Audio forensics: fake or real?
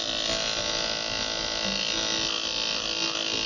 real